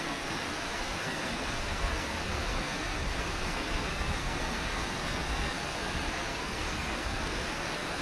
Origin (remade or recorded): remade